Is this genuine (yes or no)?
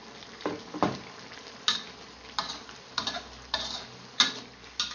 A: yes